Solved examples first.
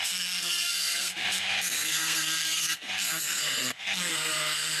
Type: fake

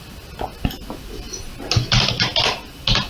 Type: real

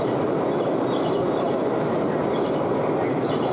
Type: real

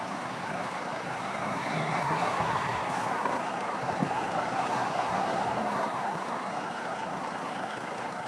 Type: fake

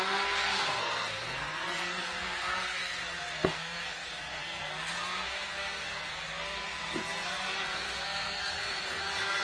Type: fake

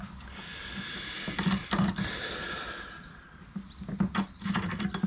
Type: real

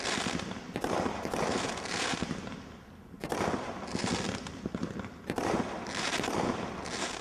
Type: fake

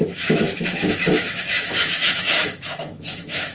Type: fake